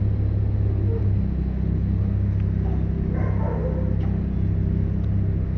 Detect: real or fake real